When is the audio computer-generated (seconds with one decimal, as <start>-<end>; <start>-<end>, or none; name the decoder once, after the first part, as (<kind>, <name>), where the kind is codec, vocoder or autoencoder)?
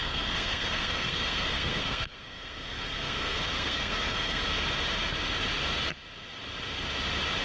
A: 0.0-4.4 (codec, SNAC)